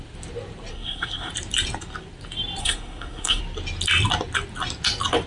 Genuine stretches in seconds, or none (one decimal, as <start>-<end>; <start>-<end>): 0.0-0.7; 1.3-2.6; 3.4-5.3